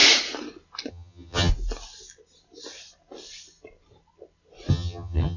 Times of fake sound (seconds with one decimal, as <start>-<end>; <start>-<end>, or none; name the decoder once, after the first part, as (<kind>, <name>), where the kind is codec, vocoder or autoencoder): 0.9-1.5 (vocoder, HiFi-GAN); 4.7-5.4